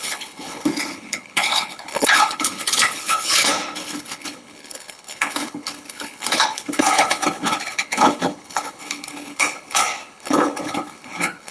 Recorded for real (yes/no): no